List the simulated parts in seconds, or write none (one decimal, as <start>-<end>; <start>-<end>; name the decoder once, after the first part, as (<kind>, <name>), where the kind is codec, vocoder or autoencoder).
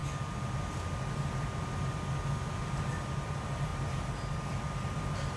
none